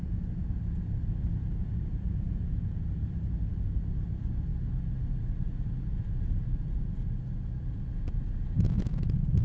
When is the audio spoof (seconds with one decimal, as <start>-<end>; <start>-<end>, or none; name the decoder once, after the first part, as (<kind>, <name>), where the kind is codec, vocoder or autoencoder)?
1.9-3.0 (vocoder, Vocos)